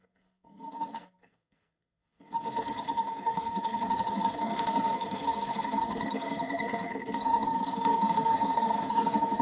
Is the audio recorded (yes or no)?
no